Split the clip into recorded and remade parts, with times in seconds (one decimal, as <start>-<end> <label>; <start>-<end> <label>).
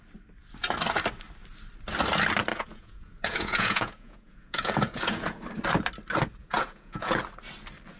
0.0-2.5 recorded; 2.5-5.4 remade; 5.4-6.4 recorded; 6.4-7.2 remade; 7.2-8.0 recorded